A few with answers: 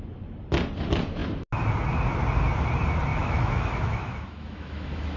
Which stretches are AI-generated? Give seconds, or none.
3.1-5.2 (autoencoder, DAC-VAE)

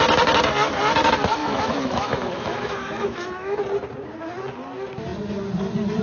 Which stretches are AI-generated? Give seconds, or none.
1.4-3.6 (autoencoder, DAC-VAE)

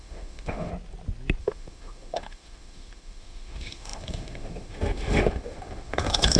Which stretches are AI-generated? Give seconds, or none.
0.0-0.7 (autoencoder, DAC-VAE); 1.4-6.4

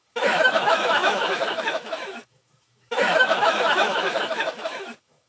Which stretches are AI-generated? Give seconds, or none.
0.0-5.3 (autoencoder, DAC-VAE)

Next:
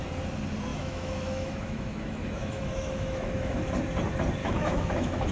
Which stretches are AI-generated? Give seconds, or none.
0.7-3.7 (autoencoder, DAC-VAE); 4.4-5.3

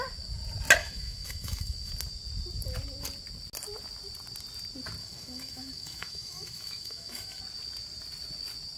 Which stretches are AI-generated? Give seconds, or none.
0.8-1.9 (autoencoder, DAC-VAE); 5.0-7.4

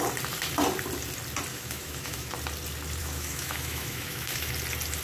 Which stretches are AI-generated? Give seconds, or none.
1.5-2.3 (autoencoder, DAC-VAE); 3.0-4.5